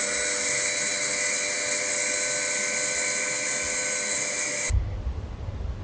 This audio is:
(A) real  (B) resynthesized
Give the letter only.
A